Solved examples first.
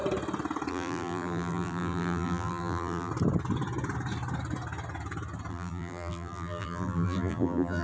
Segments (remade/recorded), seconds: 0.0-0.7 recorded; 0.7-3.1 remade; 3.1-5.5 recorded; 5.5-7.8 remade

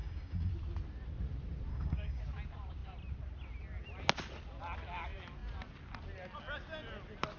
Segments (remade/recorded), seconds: 0.0-0.5 remade; 0.5-1.7 recorded; 1.7-2.2 remade; 2.2-7.4 recorded

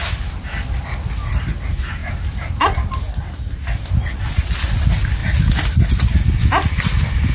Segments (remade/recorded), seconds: 0.0-7.3 recorded